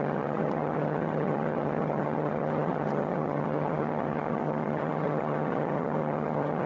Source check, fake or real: fake